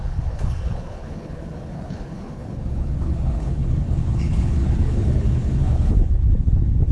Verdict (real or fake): fake